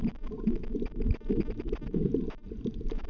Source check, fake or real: real